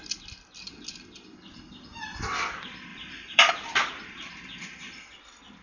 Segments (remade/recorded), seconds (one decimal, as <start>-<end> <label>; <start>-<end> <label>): 0.0-2.9 recorded; 2.9-3.5 remade; 3.5-5.6 recorded